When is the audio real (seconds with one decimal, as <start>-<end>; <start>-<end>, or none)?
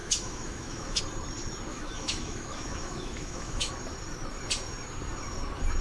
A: 1.0-1.7; 3.7-5.8